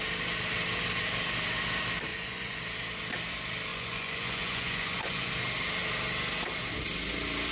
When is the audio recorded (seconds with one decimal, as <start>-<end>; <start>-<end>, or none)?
0.0-2.1; 2.6-3.7; 5.3-7.5